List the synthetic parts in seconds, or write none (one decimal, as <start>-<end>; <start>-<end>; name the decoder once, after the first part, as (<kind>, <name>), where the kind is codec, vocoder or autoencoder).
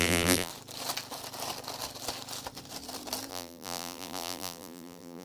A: 0.0-0.5 (vocoder, BigVGAN v2); 3.3-5.2